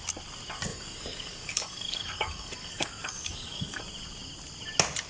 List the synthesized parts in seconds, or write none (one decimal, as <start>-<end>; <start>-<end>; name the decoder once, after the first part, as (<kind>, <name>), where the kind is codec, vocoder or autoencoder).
0.7-3.8 (codec, DAC)